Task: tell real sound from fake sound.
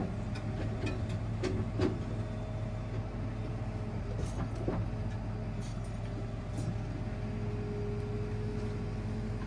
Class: real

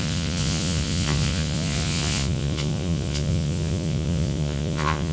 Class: fake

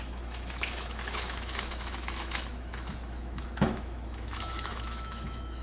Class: fake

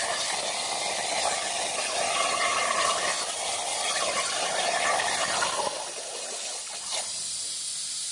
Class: real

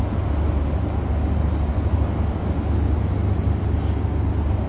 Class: real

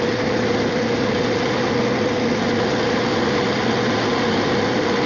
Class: real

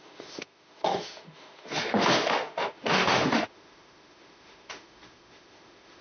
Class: fake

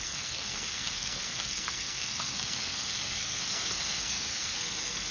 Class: fake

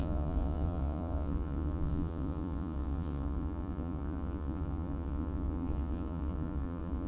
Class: fake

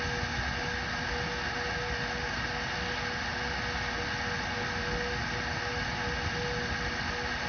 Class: real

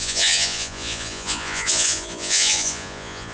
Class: fake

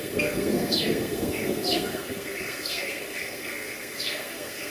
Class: fake